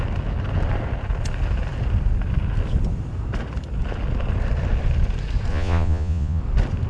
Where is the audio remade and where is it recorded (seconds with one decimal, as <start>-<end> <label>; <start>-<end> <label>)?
0.0-5.5 recorded; 5.5-6.4 remade; 6.4-6.9 recorded